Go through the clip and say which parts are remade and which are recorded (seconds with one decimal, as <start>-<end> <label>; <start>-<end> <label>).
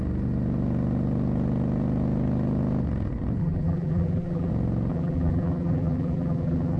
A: 0.0-3.4 recorded; 3.4-4.5 remade; 4.5-4.9 recorded; 4.9-6.8 remade